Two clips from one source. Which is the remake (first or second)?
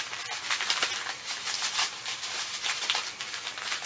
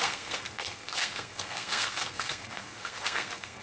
second